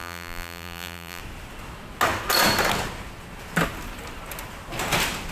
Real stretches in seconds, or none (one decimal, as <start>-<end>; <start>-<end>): 1.2-5.3

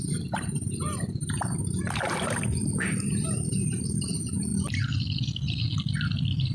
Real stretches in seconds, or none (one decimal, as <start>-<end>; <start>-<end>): 4.5-6.5

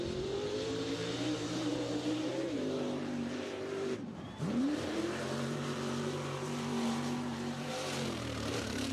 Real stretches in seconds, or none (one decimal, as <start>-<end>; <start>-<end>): none

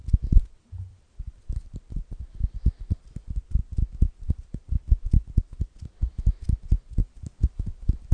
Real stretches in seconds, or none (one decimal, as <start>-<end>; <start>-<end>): 4.9-7.0